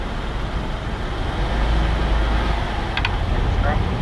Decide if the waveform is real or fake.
real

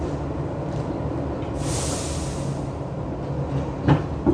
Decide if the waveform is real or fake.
real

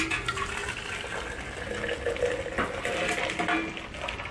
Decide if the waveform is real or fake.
real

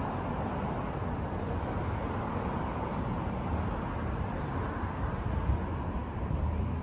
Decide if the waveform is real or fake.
real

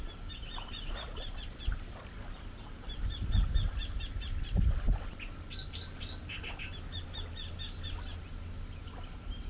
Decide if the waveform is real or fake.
real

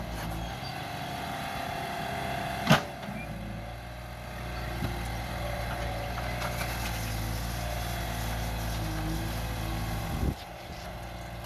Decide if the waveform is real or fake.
real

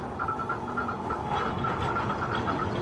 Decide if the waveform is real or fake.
real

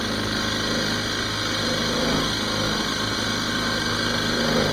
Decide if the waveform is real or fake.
real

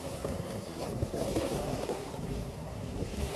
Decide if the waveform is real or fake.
fake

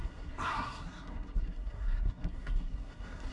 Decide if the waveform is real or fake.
fake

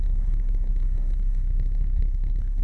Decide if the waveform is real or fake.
fake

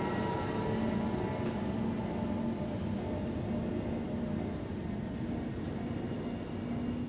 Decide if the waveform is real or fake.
real